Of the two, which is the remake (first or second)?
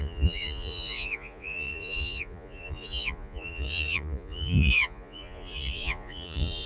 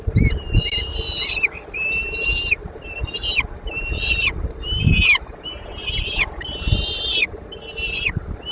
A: first